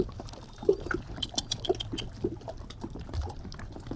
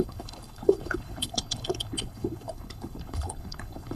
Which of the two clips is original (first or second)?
first